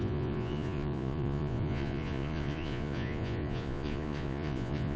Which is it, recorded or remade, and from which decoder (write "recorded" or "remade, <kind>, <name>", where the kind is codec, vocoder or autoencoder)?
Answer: remade, vocoder, Vocos